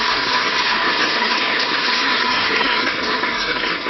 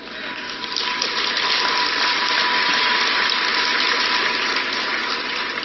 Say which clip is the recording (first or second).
second